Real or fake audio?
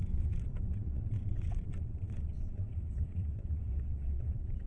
fake